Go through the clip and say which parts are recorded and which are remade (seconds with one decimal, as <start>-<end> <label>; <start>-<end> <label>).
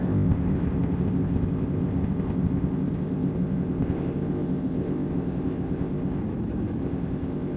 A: 0.0-6.2 remade; 6.2-6.8 recorded; 6.8-7.6 remade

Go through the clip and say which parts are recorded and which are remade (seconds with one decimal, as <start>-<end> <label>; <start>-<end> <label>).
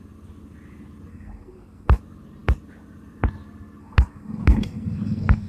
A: 0.0-1.1 recorded; 1.1-2.0 remade; 2.0-3.8 recorded; 3.8-5.5 remade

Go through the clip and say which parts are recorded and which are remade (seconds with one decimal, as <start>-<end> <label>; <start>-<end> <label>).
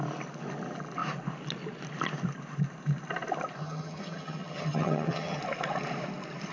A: 0.0-3.6 recorded; 3.6-5.4 remade; 5.4-6.5 recorded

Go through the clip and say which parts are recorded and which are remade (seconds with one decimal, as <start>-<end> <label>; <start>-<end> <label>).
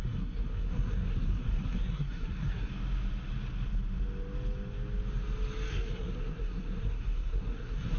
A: 0.0-2.7 remade; 2.7-5.7 recorded; 5.7-8.0 remade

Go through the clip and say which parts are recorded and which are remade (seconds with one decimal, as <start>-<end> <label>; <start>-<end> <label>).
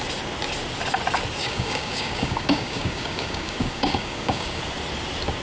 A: 0.0-1.4 recorded; 1.4-4.6 remade; 4.6-5.4 recorded